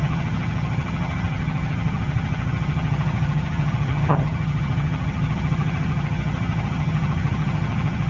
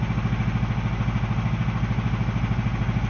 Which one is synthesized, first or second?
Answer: first